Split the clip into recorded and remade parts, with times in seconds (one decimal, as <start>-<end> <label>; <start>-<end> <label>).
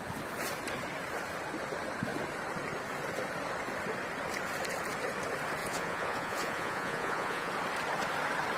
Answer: 0.0-5.6 recorded; 5.6-7.5 remade; 7.5-8.6 recorded